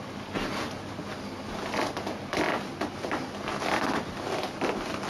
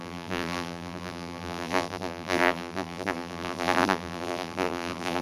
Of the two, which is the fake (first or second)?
second